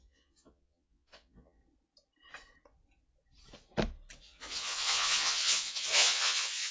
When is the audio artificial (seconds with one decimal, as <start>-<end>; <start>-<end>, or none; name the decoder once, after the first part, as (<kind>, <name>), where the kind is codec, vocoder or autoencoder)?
0.0-1.6 (vocoder, Vocos); 4.2-6.7